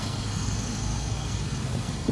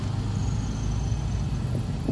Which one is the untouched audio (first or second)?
second